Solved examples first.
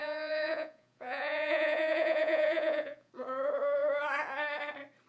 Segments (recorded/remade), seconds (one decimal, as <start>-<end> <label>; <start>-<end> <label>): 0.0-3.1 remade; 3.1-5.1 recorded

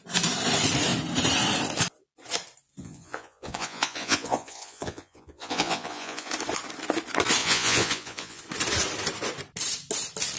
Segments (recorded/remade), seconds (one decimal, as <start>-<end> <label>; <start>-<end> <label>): 0.0-2.8 recorded; 2.8-6.3 remade; 6.3-7.4 recorded; 7.4-8.4 remade; 8.4-10.4 recorded

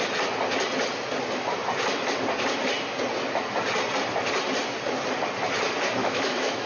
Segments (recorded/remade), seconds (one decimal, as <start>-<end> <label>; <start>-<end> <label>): 0.0-6.0 recorded; 6.0-6.7 remade

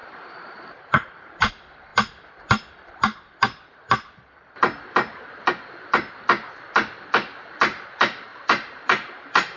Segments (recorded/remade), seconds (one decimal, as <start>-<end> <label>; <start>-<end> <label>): 0.0-1.5 remade; 1.5-8.3 recorded; 8.3-9.6 remade

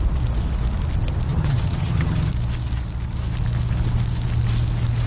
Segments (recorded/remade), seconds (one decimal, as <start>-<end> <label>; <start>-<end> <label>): 0.0-1.3 recorded; 1.3-2.3 remade; 2.3-5.1 recorded

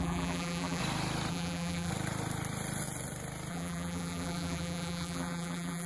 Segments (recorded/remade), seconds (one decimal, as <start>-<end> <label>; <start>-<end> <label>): 0.0-0.8 remade; 0.8-1.3 recorded; 1.3-1.9 remade; 1.9-3.5 recorded; 3.5-5.9 remade

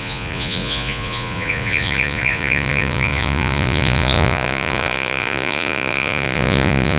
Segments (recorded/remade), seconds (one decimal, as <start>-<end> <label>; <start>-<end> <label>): 0.0-7.0 remade

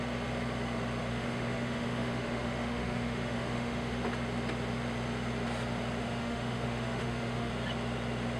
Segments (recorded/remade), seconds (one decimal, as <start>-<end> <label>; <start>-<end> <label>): 0.0-1.1 recorded; 1.1-4.0 remade; 4.0-6.0 recorded; 6.0-7.5 remade; 7.5-8.4 recorded